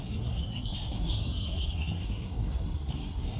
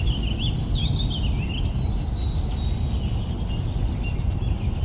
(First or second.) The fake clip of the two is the first